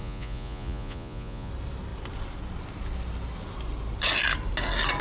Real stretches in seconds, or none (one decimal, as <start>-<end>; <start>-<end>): 1.5-5.0

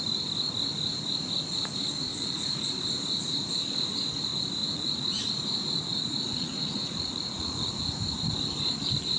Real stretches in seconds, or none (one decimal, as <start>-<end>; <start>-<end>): 0.0-2.1; 2.7-4.6; 5.3-5.9; 7.7-9.2

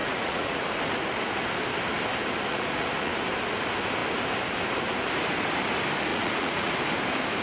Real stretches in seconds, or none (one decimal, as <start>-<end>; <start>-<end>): 0.6-2.5; 3.1-6.1; 6.7-7.4

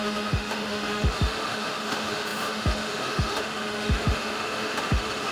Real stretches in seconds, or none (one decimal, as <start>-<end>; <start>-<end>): none

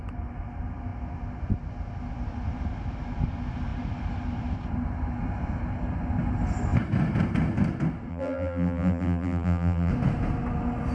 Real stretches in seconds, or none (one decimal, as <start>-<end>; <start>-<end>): 0.0-8.1; 9.9-10.9

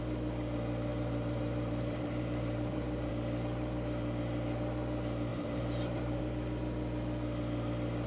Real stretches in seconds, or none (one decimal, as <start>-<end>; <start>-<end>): 0.0-0.9; 3.1-5.3; 6.2-8.1

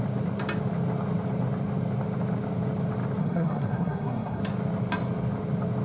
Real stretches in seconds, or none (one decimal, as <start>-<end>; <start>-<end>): 0.0-3.2; 4.4-5.8

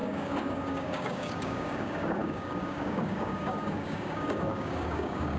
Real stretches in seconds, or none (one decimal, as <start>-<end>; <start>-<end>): none